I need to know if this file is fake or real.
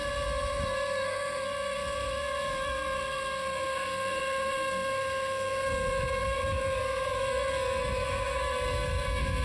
fake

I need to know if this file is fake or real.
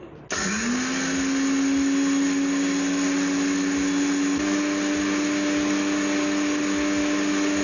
real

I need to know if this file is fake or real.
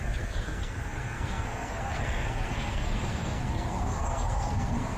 fake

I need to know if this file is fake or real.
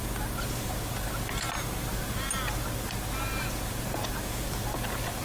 real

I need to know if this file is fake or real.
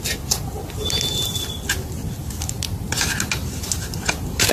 real